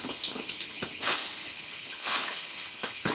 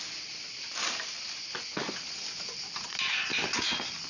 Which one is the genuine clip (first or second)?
second